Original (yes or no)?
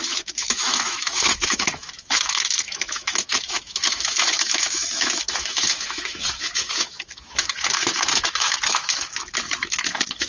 no